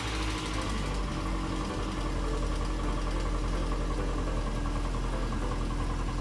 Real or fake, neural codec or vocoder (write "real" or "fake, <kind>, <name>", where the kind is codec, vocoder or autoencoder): real